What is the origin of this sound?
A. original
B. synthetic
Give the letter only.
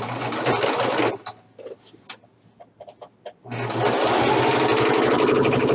A